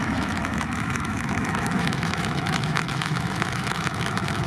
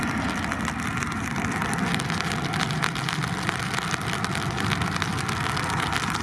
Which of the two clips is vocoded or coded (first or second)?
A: first